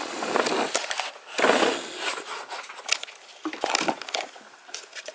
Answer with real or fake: real